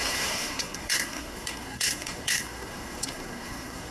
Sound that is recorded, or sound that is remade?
remade